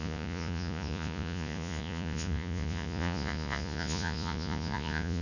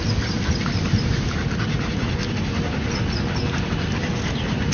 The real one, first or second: second